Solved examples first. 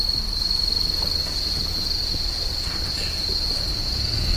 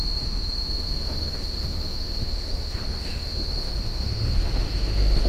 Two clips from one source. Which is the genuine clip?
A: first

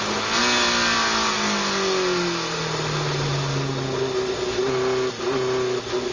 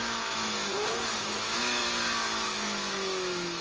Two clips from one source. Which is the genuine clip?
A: first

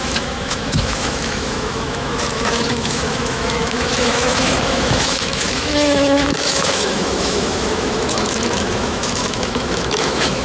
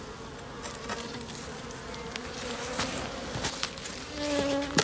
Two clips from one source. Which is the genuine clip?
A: second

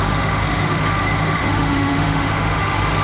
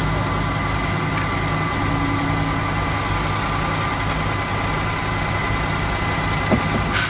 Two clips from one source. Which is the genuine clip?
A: second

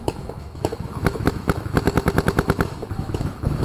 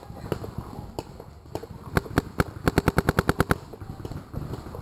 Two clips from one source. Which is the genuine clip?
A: second